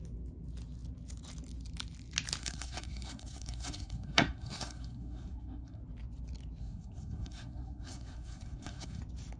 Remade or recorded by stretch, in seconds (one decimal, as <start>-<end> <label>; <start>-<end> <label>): 0.0-2.4 recorded; 2.4-5.8 remade; 5.8-6.6 recorded; 6.6-9.0 remade; 9.0-9.4 recorded